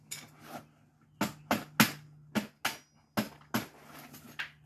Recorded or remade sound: recorded